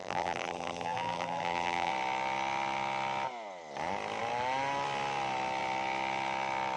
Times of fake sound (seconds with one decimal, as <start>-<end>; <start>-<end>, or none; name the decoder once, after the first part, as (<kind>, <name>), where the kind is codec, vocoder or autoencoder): 0.0-1.9 (vocoder, BigVGAN v2)